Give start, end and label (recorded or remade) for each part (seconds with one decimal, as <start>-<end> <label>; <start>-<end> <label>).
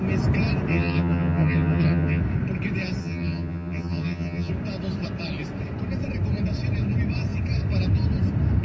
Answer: 0.0-0.7 recorded; 0.7-2.2 remade; 2.2-3.0 recorded; 3.0-4.5 remade; 4.5-8.6 recorded